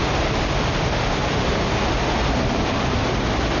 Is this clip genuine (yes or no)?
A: yes